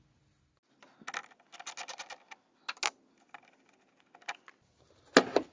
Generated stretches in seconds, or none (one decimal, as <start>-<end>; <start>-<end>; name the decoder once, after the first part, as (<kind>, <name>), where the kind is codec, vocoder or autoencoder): none